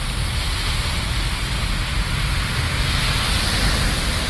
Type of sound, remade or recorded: recorded